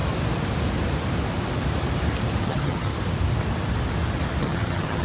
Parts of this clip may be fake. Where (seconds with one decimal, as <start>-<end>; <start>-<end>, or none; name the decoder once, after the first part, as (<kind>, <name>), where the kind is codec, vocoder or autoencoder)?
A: 2.4-2.9 (vocoder, HiFi-GAN); 4.4-5.0